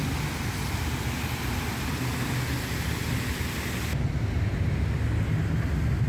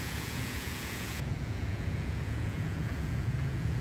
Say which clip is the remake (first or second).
second